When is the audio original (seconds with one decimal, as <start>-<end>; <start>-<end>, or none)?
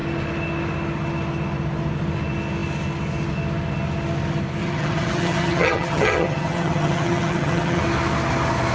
0.0-4.6; 7.8-8.7